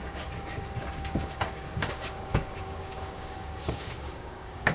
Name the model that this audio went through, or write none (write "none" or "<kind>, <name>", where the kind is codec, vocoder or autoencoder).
codec, DAC